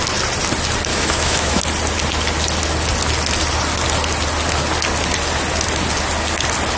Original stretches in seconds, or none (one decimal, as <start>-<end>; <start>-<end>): 0.0-0.9; 1.6-6.8